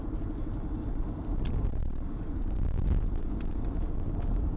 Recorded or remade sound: recorded